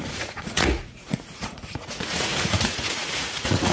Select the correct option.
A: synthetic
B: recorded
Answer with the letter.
A